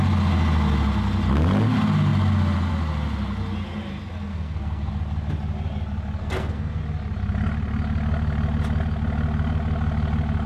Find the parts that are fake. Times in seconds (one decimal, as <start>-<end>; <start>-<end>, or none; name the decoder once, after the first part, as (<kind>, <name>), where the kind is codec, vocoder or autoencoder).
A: 4.3-4.9 (codec, SNAC); 6.2-6.8